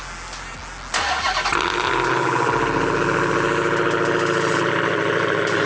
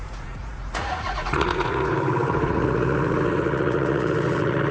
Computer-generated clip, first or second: second